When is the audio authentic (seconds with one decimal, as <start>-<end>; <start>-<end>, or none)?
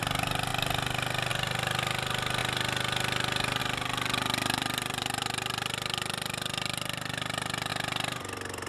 0.0-4.4; 7.1-7.7